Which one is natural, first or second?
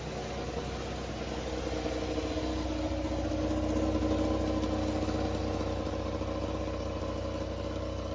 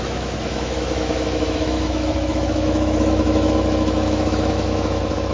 first